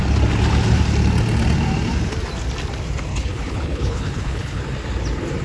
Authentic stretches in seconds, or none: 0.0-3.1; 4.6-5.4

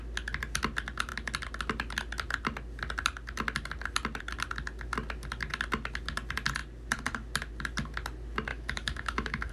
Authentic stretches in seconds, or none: 0.0-8.5